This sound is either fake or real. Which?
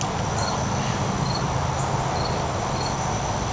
real